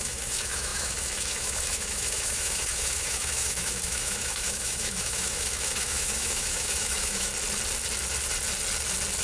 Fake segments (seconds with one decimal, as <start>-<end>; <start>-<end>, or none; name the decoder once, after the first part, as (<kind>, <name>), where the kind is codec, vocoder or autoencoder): 0.0-7.3 (autoencoder, DAC-VAE)